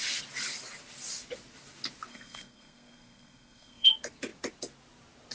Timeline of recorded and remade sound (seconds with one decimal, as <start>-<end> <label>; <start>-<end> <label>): 0.0-2.1 recorded; 2.1-3.9 remade; 3.9-5.3 recorded